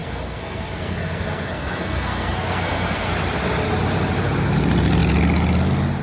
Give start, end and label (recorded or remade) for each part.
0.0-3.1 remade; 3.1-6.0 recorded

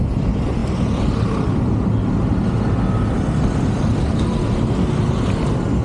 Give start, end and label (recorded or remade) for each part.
0.0-5.8 recorded

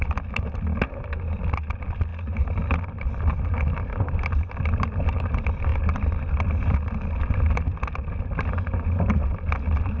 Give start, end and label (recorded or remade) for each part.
0.0-10.0 recorded